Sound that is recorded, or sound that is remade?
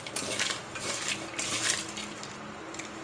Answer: recorded